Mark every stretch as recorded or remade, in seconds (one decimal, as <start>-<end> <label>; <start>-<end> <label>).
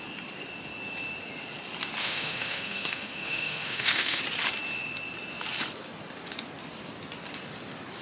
0.0-2.0 recorded; 2.0-4.2 remade; 4.2-8.0 recorded